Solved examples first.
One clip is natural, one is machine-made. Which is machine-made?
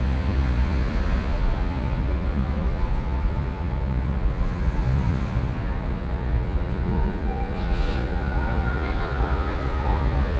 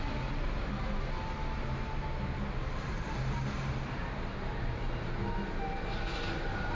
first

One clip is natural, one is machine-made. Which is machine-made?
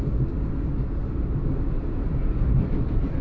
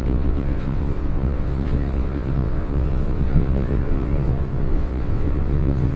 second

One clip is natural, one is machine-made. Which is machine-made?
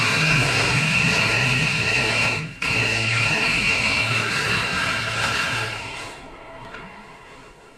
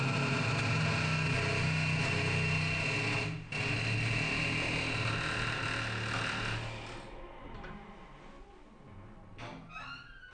first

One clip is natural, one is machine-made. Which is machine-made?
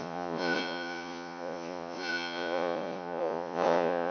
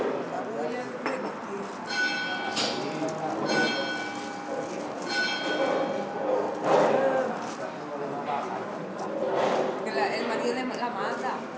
first